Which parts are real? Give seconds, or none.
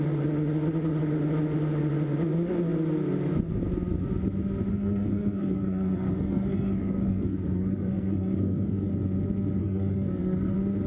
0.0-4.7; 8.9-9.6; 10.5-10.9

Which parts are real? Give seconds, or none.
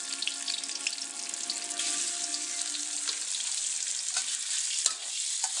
0.0-5.6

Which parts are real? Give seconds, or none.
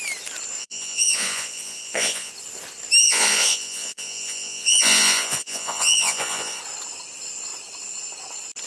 0.0-0.6; 2.3-3.0; 6.6-8.7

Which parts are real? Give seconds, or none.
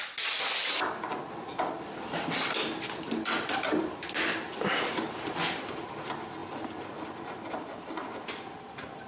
0.0-9.1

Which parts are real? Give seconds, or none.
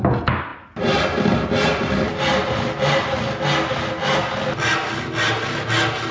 0.0-6.1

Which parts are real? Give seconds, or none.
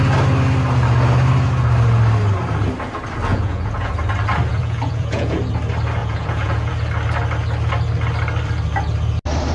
0.0-3.3; 3.9-4.5; 5.4-6.0; 6.7-9.5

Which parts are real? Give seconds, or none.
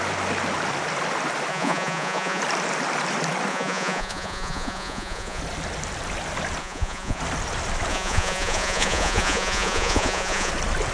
0.0-1.5; 2.4-3.5; 5.4-6.6; 7.2-7.9; 10.5-10.9